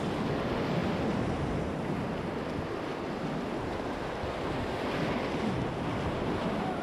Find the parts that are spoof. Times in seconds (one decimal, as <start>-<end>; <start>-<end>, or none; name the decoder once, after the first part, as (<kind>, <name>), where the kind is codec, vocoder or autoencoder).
none